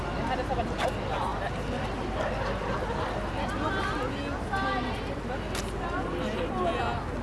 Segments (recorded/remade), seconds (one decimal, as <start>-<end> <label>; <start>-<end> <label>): 0.0-7.2 recorded